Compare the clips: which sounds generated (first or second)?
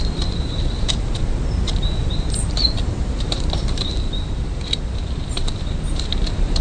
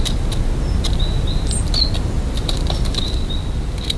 first